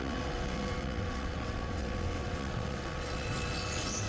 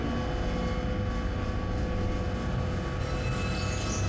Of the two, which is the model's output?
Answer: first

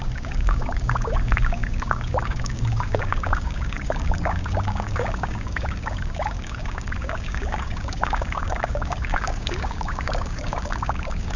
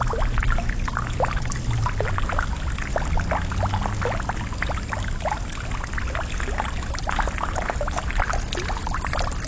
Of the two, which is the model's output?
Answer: first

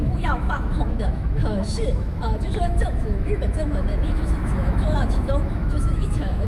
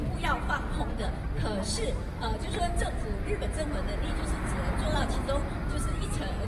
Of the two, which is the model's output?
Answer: first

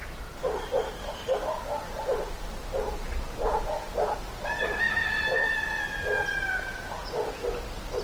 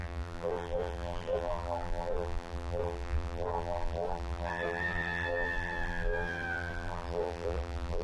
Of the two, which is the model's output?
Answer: second